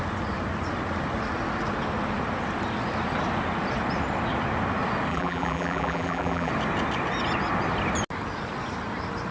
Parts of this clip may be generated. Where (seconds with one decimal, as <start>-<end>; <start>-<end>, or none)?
5.1-6.5